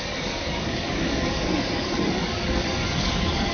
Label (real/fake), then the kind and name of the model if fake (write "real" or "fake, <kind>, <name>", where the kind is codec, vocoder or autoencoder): fake, codec, DAC